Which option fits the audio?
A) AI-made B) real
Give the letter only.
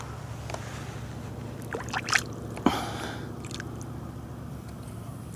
B